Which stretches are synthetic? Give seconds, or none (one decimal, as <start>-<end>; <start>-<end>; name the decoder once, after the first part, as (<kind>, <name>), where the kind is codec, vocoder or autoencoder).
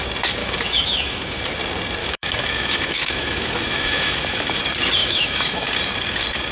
0.4-1.4 (autoencoder, DAC-VAE); 2.0-4.6; 5.0-5.7